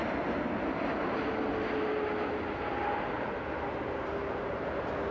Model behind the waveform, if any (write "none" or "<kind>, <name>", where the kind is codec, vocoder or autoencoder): none